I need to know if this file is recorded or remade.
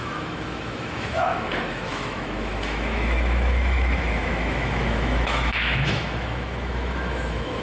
remade